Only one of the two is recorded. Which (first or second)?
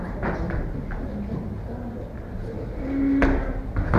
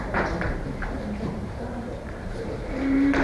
first